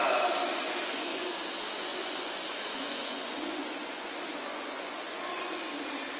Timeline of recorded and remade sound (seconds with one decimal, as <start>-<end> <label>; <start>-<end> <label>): 0.0-0.4 recorded; 0.4-1.3 remade; 1.3-1.9 recorded; 1.9-5.6 remade; 5.6-6.2 recorded